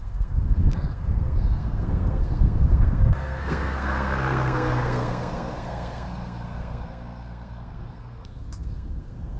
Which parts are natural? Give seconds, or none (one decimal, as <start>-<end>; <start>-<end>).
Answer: none

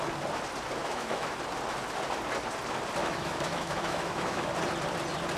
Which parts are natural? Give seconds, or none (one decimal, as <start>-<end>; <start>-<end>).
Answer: 0.0-0.8; 1.4-3.0; 4.5-5.4

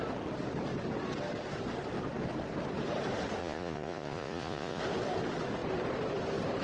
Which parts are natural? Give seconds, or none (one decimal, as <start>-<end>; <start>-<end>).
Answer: 0.0-3.4; 4.8-6.6